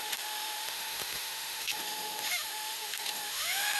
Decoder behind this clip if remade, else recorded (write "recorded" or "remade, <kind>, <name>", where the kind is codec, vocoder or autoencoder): remade, autoencoder, DAC-VAE